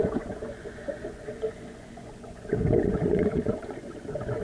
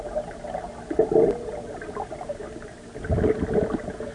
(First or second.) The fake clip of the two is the first